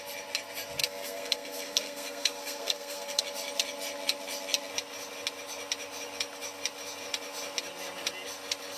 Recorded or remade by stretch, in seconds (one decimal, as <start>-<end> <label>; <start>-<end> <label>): 0.0-0.8 recorded; 0.8-3.2 remade; 3.2-8.8 recorded